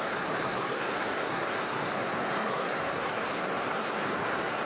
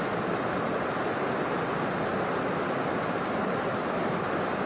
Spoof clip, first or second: first